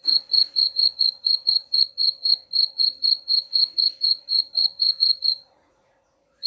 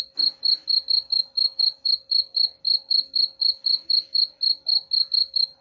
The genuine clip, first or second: second